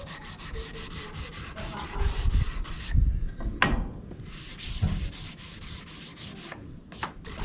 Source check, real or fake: real